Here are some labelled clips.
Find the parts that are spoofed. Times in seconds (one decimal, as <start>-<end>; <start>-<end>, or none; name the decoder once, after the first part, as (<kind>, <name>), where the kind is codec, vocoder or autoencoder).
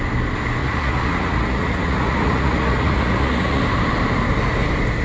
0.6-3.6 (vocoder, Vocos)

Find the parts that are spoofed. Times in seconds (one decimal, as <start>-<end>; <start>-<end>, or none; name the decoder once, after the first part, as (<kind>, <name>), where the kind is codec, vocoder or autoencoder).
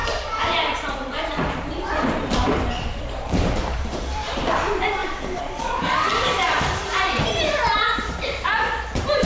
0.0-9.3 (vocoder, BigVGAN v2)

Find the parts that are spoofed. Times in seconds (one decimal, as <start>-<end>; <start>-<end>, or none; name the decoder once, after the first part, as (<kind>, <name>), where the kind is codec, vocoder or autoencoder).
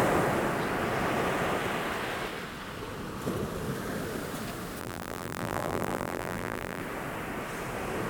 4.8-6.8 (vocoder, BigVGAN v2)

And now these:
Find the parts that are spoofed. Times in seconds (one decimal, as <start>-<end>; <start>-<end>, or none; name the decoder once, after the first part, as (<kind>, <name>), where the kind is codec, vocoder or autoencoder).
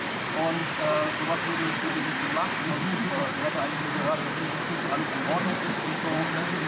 0.6-4.6 (vocoder, BigVGAN v2)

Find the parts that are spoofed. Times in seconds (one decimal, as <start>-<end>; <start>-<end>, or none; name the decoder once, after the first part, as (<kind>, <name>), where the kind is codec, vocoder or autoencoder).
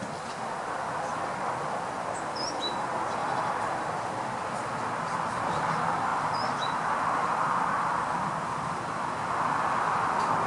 3.2-3.8 (vocoder, BigVGAN v2); 6.1-9.3